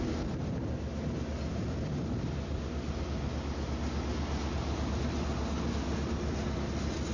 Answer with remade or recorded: recorded